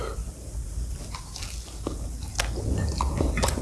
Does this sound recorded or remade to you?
recorded